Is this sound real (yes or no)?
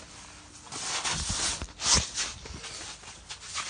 yes